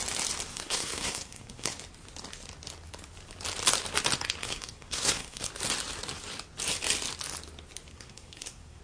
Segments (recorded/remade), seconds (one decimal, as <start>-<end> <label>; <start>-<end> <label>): 0.0-0.5 recorded; 0.5-1.8 remade; 1.8-4.4 recorded; 4.4-5.5 remade; 5.5-7.9 recorded; 7.9-8.8 remade

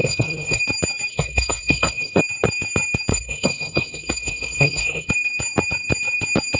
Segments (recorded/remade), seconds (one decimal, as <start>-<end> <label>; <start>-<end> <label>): 0.0-0.6 remade; 0.6-1.1 recorded; 1.1-2.2 remade; 2.2-3.1 recorded; 3.1-5.1 remade; 5.1-6.6 recorded

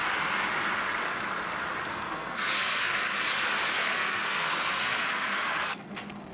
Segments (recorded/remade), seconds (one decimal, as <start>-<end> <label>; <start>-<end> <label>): 0.0-1.9 recorded; 1.9-3.0 remade; 3.0-3.7 recorded; 3.7-6.3 remade

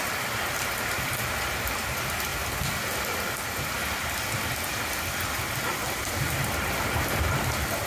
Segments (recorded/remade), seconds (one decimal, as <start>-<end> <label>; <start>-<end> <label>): 0.0-7.9 recorded

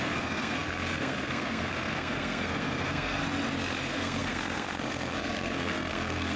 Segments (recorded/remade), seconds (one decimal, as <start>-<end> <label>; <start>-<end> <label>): 0.0-3.2 remade; 3.2-3.8 recorded; 3.8-6.4 remade